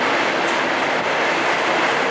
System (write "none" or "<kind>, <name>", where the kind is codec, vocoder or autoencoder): none